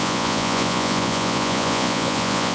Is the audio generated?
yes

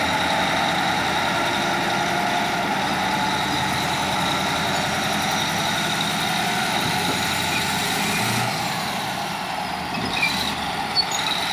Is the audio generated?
no